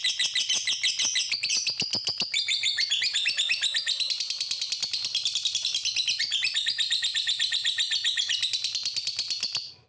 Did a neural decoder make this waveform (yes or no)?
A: no